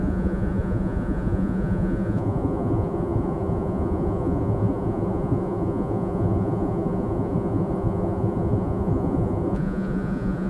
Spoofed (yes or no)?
yes